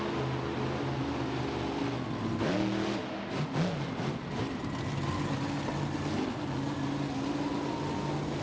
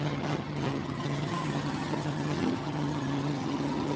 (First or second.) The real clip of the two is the first